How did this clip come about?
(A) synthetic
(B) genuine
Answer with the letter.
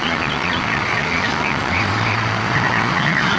A